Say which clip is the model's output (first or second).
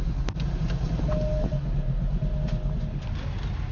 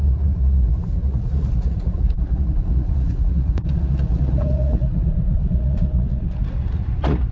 second